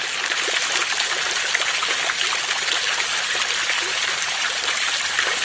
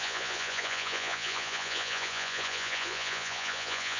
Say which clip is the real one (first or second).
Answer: first